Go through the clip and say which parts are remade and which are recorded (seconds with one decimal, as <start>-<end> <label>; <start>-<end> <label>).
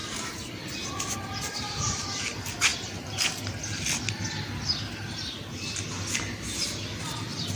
0.0-7.6 recorded